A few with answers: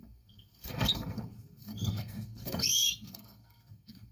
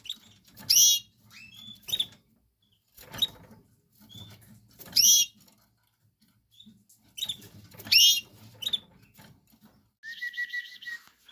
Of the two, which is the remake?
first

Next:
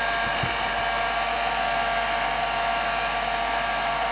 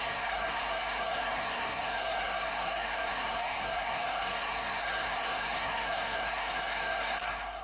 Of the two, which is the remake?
second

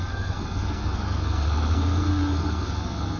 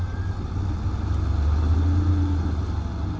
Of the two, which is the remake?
first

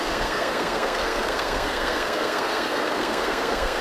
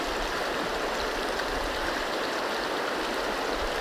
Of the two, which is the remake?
first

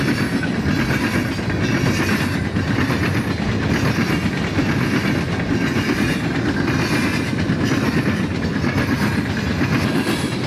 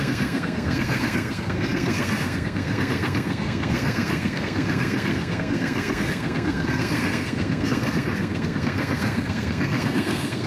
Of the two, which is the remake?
second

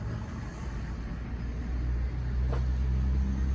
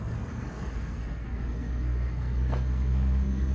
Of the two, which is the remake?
second